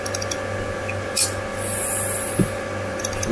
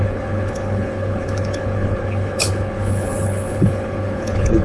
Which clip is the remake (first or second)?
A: second